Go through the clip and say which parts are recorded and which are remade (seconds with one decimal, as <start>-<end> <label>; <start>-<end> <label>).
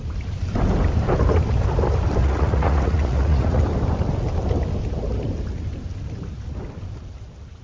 0.0-2.2 recorded; 2.2-3.6 remade; 3.6-7.6 recorded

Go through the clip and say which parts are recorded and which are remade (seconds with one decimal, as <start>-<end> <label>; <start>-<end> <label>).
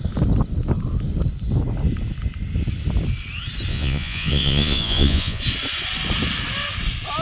0.0-3.7 recorded; 3.7-5.4 remade; 5.4-7.2 recorded